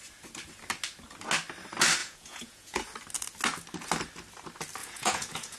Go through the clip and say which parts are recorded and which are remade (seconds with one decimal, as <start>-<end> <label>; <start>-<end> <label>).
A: 0.0-2.0 recorded; 2.0-2.8 remade; 2.8-4.8 recorded; 4.8-5.6 remade